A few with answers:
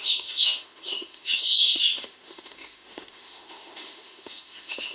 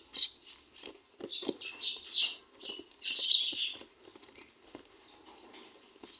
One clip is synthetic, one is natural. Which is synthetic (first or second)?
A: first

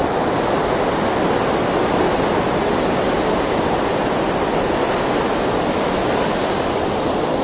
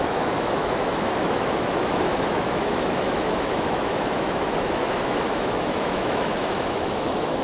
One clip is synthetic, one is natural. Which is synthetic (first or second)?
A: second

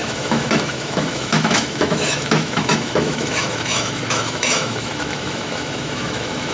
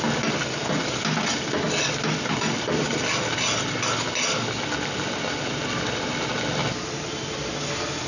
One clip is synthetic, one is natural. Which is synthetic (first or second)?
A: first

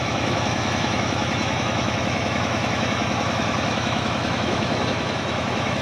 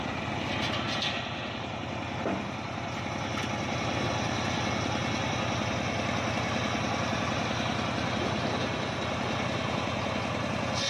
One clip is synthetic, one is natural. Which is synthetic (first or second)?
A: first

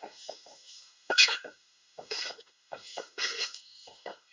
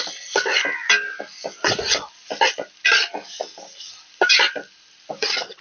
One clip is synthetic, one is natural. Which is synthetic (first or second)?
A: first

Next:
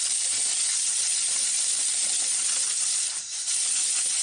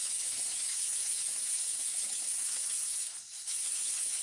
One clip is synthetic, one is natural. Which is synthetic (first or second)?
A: second